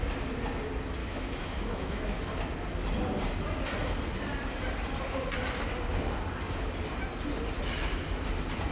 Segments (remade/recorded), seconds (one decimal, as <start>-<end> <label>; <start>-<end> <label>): 0.0-1.0 recorded; 1.0-2.2 remade; 2.2-8.7 recorded